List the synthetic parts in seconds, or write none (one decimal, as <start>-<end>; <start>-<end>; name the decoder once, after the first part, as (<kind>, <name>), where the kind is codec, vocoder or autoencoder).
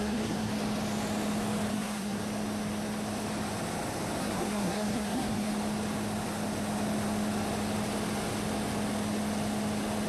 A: 0.0-0.5 (codec, SNAC); 1.7-2.2; 4.2-5.5